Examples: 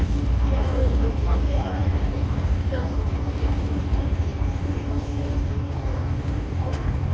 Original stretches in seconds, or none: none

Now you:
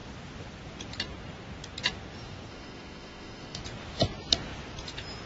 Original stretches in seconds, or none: 0.0-2.5; 3.6-5.3

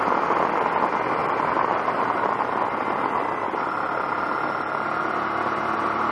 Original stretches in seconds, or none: 0.0-6.1

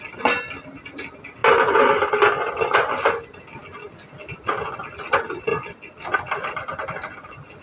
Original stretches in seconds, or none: 0.0-7.6

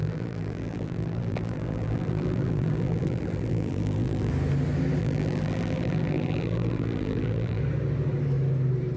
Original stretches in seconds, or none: 4.3-5.0; 7.6-9.0

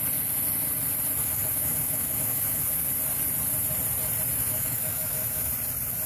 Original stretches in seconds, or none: 0.0-1.2; 2.9-4.4; 5.5-6.1

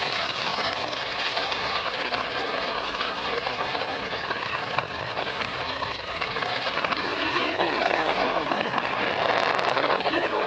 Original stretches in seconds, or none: 9.0-9.7